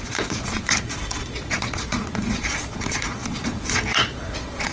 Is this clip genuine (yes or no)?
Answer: no